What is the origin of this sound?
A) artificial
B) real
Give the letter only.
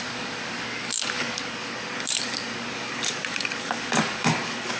A